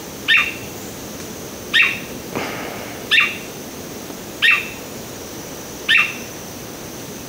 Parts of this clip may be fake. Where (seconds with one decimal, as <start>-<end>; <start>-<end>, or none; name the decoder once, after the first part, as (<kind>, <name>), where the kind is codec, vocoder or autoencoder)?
none

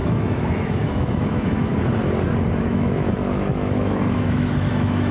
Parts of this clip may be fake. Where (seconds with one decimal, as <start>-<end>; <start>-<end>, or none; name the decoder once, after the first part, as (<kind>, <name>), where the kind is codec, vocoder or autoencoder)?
0.0-1.7 (autoencoder, DAC-VAE); 2.6-5.1

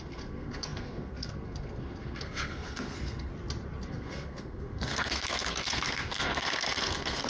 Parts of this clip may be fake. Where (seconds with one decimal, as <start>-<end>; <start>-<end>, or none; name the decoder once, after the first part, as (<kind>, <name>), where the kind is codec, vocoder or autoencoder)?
0.0-3.3 (codec, SNAC); 3.9-7.3

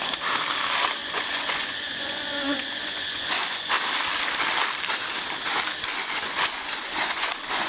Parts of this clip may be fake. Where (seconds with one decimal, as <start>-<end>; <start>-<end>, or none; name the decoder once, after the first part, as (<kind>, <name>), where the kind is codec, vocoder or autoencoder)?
1.0-3.7 (vocoder, Vocos); 5.9-7.7

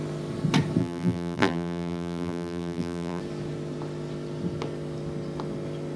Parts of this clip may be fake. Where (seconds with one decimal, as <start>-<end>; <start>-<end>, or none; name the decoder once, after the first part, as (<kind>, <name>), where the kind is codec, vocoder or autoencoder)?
0.8-3.2 (vocoder, BigVGAN v2)